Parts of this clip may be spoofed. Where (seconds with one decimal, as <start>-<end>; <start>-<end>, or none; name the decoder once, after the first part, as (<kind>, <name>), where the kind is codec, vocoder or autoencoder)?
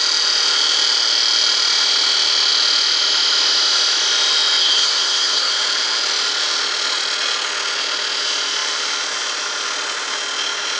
4.6-5.5 (codec, SNAC)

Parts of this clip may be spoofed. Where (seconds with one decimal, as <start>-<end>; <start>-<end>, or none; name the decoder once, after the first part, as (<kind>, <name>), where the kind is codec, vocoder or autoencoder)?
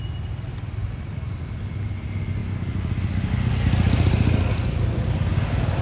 none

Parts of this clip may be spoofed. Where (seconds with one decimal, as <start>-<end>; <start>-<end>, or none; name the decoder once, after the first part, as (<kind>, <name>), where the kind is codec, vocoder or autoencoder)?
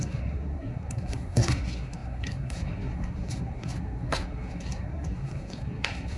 0.0-6.2 (codec, SNAC)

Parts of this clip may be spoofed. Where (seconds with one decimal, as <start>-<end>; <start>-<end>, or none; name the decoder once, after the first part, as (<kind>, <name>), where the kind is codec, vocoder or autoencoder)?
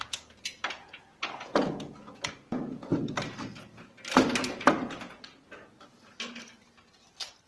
0.0-2.9 (vocoder, Vocos)